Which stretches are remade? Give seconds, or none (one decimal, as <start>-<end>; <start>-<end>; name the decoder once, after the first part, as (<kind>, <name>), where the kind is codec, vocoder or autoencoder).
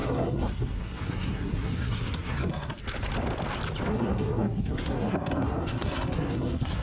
0.0-2.8 (codec, SNAC); 3.9-6.8